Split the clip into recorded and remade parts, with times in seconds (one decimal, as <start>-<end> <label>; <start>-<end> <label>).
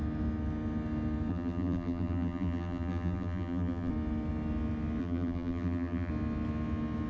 0.0-1.3 recorded; 1.3-3.9 remade; 3.9-5.0 recorded; 5.0-6.1 remade; 6.1-7.1 recorded